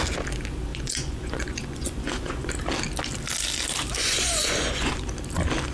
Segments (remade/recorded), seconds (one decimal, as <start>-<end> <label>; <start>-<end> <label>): 0.0-0.7 recorded; 0.7-2.5 remade; 2.5-4.0 recorded; 4.0-4.9 remade; 4.9-5.7 recorded

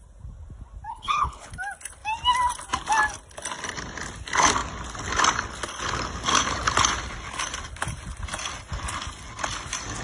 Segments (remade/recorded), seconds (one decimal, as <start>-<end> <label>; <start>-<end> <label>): 0.0-0.9 recorded; 0.9-1.5 remade; 1.5-10.0 recorded

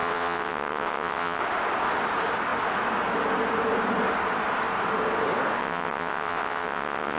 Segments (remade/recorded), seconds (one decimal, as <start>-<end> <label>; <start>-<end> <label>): 0.0-1.4 remade; 1.4-5.6 recorded; 5.6-7.2 remade